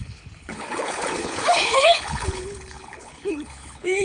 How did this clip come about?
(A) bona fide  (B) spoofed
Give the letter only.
B